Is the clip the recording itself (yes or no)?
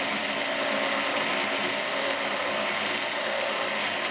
yes